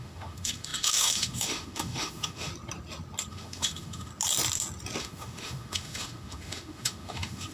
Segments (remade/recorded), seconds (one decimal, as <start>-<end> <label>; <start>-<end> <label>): 0.0-2.5 remade; 2.5-3.3 recorded; 3.3-4.1 remade; 4.1-5.0 recorded; 5.0-7.5 remade